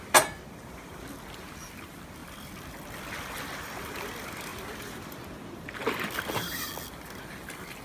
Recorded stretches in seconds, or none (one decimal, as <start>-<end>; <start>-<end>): 0.0-7.8